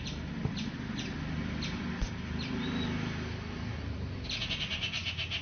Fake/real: real